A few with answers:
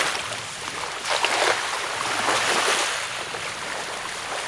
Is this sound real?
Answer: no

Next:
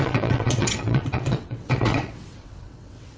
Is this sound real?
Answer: no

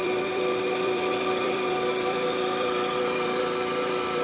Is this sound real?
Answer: no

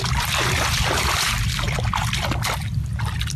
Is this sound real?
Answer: yes